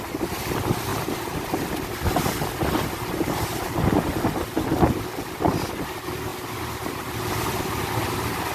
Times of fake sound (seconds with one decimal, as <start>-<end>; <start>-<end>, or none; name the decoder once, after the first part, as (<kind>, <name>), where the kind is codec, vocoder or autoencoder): none